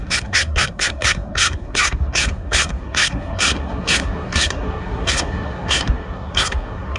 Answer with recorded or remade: remade